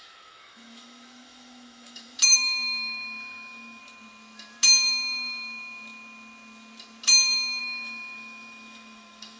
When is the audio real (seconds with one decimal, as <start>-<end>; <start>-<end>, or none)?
3.8-7.6